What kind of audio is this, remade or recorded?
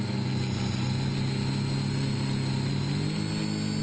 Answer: recorded